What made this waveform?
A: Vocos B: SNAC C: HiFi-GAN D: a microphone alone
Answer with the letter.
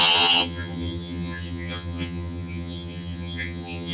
C